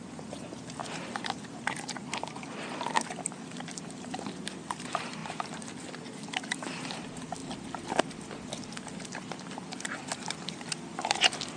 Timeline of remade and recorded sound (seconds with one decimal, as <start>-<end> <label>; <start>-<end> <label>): 0.0-11.6 recorded